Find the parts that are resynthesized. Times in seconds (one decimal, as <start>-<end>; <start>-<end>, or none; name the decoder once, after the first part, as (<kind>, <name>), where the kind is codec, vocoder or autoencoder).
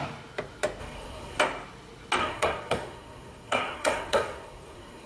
0.8-1.4 (codec, SNAC); 2.2-5.1